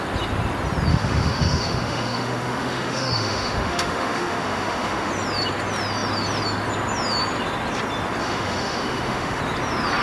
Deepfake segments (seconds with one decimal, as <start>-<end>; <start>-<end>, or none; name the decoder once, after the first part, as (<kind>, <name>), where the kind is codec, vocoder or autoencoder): 0.9-5.1 (autoencoder, DAC-VAE); 8.2-9.4